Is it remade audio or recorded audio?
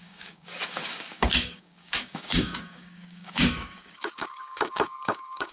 remade